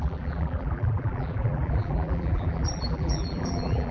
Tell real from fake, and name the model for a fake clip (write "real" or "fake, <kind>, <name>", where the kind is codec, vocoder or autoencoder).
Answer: fake, vocoder, BigVGAN v2